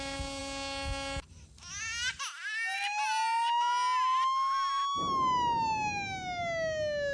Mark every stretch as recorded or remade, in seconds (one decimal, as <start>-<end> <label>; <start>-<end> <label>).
0.0-7.1 recorded